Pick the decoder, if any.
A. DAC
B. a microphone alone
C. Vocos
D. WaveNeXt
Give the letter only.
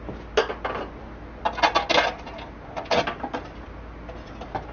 B